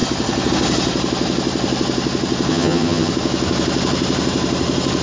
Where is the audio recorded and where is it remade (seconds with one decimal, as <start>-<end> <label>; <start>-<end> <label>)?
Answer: 0.0-2.5 recorded; 2.5-3.1 remade; 3.1-5.0 recorded

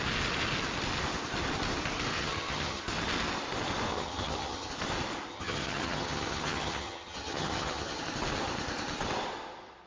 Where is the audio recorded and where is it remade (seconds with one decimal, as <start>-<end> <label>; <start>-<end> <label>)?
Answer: 0.0-2.1 recorded; 2.1-2.8 remade; 2.8-3.9 recorded; 3.9-4.7 remade; 4.7-5.3 recorded; 5.3-8.0 remade; 8.0-9.9 recorded

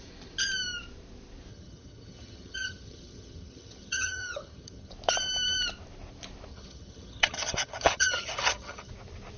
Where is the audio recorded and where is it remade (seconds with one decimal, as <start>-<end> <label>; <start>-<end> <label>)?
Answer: 0.0-1.5 recorded; 1.5-4.9 remade; 4.9-6.5 recorded; 6.5-8.9 remade; 8.9-9.4 recorded

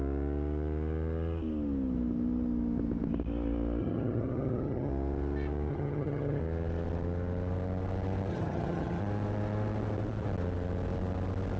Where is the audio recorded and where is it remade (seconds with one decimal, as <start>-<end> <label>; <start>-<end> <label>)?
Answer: 0.0-3.8 recorded; 3.8-4.9 remade; 4.9-5.7 recorded; 5.7-6.4 remade; 6.4-8.3 recorded; 8.3-9.0 remade; 9.0-11.6 recorded

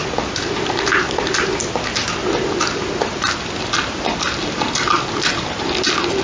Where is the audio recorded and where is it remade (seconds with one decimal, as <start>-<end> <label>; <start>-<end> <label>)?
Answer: 0.0-6.2 recorded

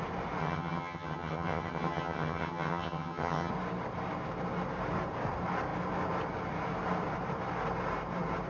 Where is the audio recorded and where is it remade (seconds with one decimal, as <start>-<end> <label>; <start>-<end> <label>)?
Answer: 0.0-0.4 recorded; 0.4-3.5 remade; 3.5-8.5 recorded